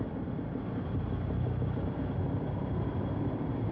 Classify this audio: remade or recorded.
recorded